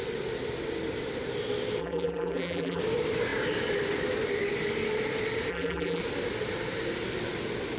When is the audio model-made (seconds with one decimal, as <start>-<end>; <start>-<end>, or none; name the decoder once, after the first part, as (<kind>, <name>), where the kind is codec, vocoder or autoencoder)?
1.8-2.8 (vocoder, BigVGAN v2); 5.5-6.0